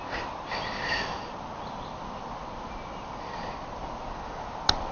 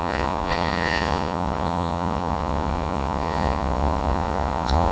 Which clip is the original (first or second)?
first